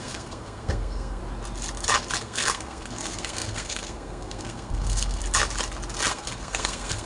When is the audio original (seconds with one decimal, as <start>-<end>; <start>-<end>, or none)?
1.2-2.2; 5.2-6.1